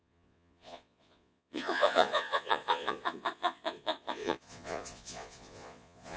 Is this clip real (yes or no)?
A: no